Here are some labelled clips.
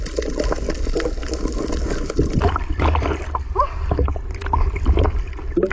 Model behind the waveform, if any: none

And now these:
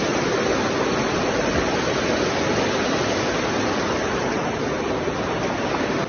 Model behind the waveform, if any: none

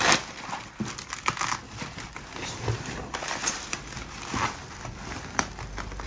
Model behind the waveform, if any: none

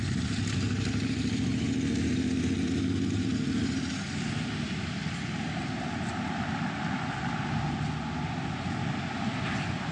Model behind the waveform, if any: none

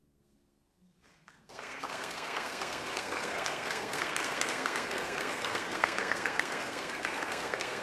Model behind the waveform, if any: codec, SNAC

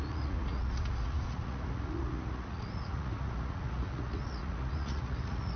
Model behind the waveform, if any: vocoder, Vocos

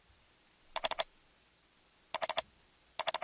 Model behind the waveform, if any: none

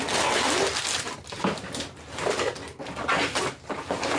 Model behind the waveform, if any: none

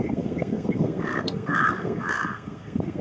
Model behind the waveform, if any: codec, SNAC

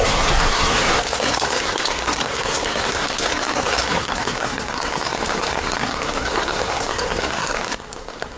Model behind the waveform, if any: codec, SNAC